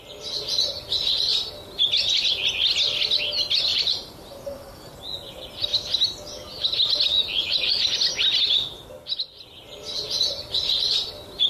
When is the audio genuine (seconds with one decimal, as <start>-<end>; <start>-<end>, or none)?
0.0-3.7; 4.9-11.5

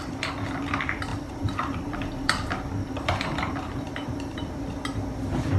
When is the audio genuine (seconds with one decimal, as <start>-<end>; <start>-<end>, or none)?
0.0-1.1; 4.5-5.6